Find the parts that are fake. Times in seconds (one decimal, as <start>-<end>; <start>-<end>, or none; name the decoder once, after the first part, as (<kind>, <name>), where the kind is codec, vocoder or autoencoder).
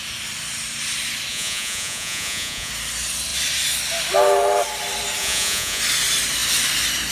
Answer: 1.3-2.7 (vocoder, Vocos); 5.2-5.8